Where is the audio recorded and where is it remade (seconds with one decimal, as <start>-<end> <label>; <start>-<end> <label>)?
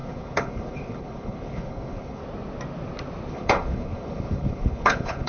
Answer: 0.0-2.2 remade; 2.2-3.3 recorded; 3.3-5.3 remade